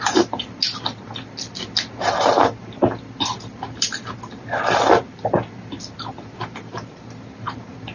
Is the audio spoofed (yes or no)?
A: no